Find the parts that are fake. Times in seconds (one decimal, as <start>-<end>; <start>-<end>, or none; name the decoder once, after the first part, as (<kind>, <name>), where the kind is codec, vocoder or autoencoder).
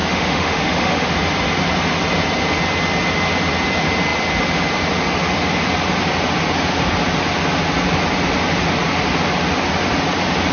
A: 0.0-1.1 (autoencoder, DAC-VAE)